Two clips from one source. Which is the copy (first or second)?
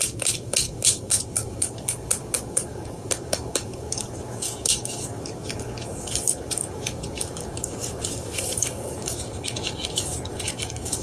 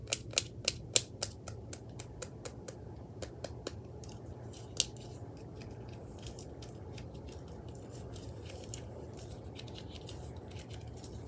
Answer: first